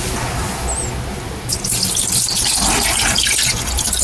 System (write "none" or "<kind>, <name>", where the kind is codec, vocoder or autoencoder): none